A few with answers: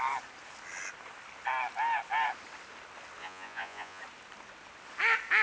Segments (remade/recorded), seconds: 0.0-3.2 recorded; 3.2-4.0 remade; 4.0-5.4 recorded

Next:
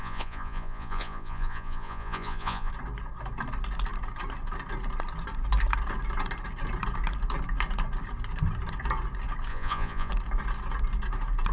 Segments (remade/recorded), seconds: 0.0-2.7 remade; 2.7-9.5 recorded; 9.5-10.1 remade; 10.1-11.5 recorded

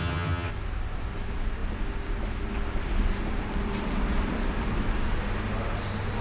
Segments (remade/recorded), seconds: 0.0-0.5 remade; 0.5-6.2 recorded